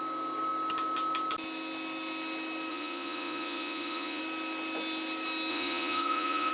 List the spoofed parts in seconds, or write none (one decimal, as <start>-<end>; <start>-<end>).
2.7-4.2; 5.5-6.5